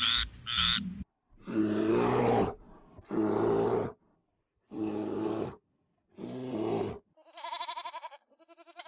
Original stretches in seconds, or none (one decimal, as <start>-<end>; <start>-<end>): 0.0-1.6; 2.2-4.5; 6.1-8.9